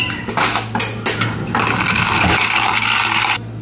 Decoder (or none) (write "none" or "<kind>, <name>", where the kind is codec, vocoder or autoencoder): none